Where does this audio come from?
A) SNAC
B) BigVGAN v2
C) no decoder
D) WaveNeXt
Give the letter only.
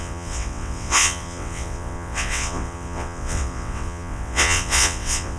D